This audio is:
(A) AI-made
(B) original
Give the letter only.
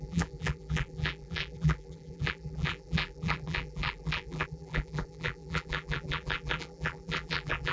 A